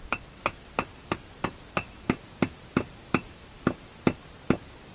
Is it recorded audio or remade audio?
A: recorded